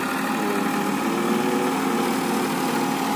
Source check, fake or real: real